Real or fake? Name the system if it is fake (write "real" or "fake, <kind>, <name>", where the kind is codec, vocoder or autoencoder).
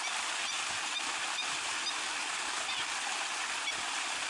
real